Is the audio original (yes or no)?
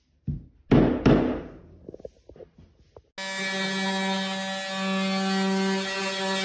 yes